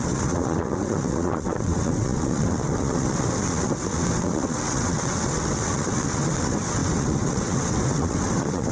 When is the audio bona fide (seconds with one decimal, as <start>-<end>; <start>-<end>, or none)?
none